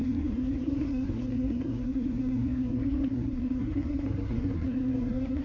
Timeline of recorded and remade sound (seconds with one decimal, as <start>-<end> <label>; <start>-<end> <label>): 0.0-5.4 remade